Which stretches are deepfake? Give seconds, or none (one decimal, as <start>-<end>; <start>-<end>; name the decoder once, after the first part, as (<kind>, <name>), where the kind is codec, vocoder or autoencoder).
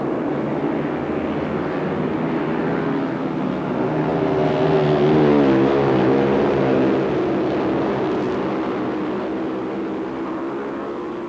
none